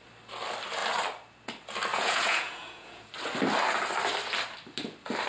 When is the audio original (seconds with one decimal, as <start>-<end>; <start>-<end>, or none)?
0.0-1.9; 3.1-5.3